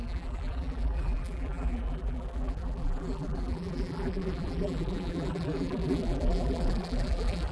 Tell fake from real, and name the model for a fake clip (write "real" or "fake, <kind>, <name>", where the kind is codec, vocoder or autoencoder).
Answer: fake, vocoder, BigVGAN v2